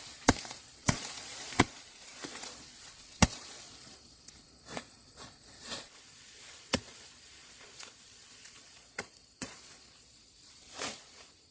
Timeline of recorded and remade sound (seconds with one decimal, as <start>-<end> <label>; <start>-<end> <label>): 0.0-11.5 remade